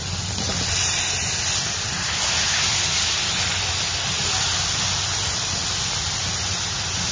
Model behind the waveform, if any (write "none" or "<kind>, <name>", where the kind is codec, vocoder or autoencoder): none